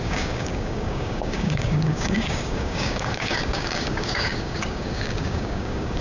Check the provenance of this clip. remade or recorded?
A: remade